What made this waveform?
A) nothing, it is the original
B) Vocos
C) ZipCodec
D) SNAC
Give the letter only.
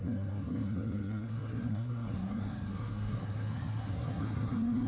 D